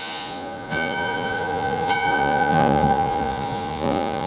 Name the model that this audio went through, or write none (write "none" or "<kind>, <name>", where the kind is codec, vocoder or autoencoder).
vocoder, Vocos